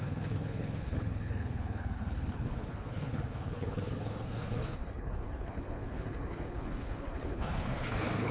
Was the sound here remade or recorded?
remade